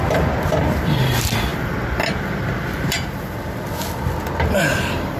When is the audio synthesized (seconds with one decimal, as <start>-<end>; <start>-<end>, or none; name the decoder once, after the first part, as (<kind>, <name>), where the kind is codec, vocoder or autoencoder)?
none